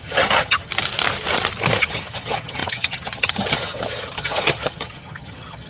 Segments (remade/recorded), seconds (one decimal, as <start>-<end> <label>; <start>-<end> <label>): 0.0-0.7 remade; 0.7-1.8 recorded; 1.8-5.7 remade